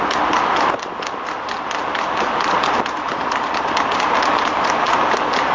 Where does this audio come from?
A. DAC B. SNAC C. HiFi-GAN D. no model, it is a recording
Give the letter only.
D